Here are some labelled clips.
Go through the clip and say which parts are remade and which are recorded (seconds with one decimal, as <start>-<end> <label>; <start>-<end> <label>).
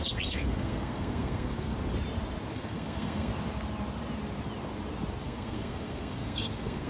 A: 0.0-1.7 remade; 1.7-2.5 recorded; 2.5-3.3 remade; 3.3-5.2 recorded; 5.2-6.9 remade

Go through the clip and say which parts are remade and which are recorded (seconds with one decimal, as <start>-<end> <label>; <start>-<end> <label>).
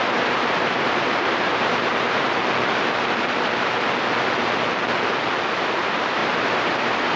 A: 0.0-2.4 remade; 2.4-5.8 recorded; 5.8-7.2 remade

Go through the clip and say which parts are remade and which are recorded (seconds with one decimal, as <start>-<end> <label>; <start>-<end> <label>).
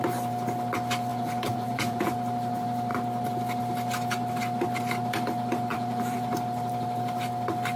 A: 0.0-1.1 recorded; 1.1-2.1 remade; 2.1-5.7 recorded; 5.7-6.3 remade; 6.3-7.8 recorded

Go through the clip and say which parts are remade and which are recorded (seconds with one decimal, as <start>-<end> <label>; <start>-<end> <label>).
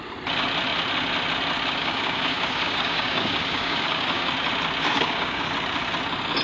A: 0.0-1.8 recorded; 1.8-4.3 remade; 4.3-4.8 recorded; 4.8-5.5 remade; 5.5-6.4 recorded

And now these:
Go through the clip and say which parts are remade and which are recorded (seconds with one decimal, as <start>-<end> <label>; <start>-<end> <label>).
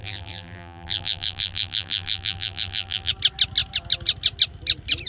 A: 0.0-3.1 remade; 3.1-5.1 recorded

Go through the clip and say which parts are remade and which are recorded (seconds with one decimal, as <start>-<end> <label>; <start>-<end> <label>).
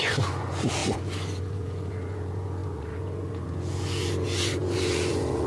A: 0.0-5.5 remade